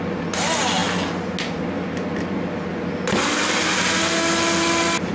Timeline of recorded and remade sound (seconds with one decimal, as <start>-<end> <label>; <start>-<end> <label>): 0.0-5.1 recorded